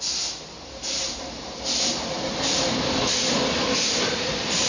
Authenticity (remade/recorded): remade